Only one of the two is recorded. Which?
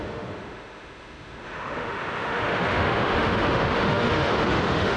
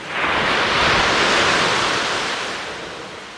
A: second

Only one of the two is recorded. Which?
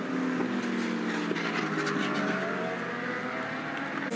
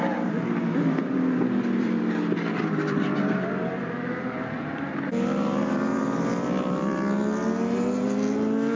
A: first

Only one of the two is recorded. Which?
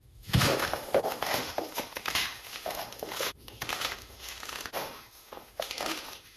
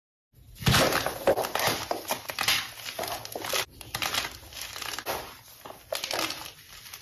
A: second